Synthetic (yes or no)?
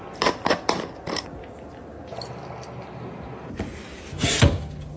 no